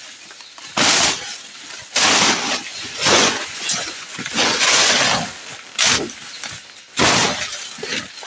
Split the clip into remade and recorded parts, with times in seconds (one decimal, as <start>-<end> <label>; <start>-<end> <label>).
0.0-2.7 recorded; 2.7-5.0 remade; 5.0-8.3 recorded

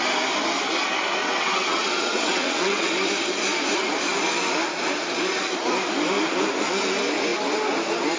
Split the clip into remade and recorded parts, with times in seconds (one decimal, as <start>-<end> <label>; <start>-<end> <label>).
0.0-1.2 recorded; 1.2-2.9 remade; 2.9-8.2 recorded